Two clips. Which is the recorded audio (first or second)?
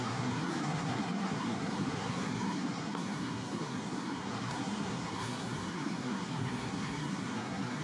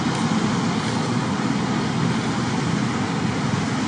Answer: second